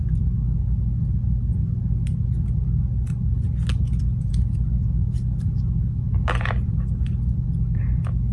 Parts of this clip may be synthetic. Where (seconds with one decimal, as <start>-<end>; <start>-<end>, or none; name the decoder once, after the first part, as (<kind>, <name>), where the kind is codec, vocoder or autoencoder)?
none